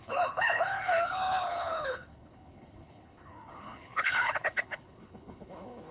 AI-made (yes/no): yes